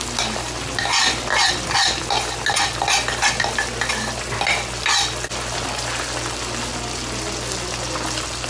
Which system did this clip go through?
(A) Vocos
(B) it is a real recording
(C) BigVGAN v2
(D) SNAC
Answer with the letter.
B